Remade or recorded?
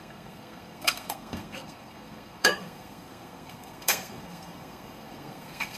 remade